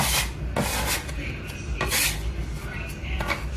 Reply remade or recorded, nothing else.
remade